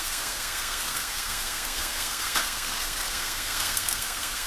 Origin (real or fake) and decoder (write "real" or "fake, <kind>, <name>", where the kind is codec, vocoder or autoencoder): fake, codec, SNAC